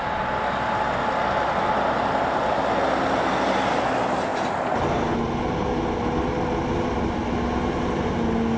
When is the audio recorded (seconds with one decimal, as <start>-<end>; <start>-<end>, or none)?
0.0-8.6